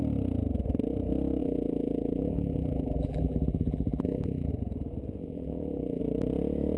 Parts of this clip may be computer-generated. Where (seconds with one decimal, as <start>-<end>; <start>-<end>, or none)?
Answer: 1.4-4.5; 5.2-6.0